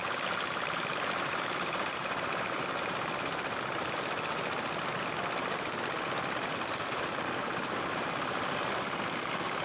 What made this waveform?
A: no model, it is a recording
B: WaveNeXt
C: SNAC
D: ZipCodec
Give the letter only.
A